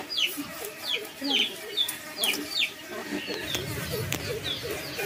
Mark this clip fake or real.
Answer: real